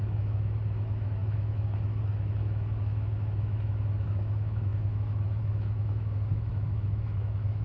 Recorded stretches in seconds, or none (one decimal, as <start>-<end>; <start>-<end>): none